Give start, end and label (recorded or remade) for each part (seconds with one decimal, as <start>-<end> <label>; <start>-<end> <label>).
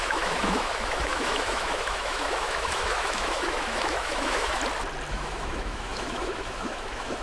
0.0-4.6 remade; 4.6-5.1 recorded; 5.1-7.2 remade